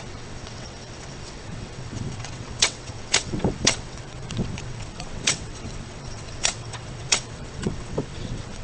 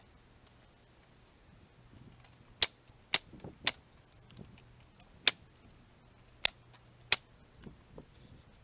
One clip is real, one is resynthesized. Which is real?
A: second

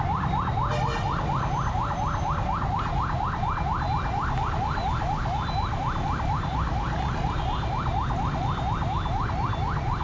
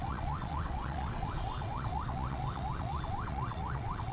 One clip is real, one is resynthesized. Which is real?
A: first